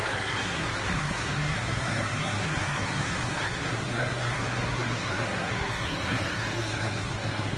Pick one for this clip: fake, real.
fake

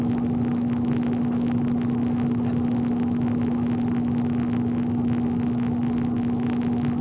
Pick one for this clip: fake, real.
real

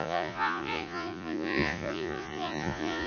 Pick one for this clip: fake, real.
fake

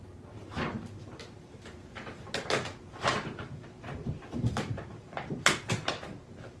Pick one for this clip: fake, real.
fake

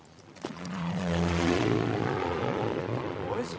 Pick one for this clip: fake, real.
fake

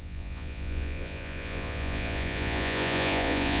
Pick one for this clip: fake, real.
fake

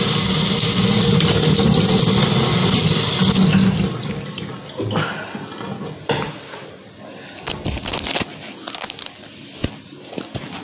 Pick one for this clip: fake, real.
real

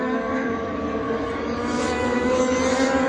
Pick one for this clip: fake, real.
fake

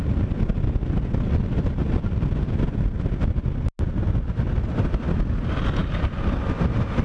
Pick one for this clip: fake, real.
real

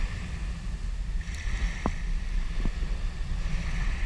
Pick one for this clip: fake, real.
real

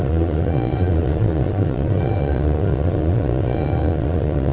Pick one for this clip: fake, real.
fake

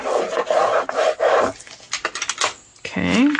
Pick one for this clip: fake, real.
real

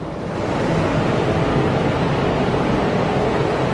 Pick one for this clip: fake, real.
real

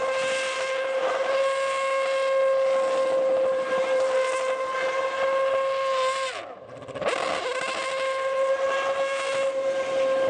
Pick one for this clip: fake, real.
real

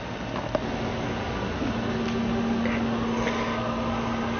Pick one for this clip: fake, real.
real